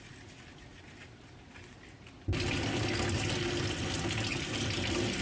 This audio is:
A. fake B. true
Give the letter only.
B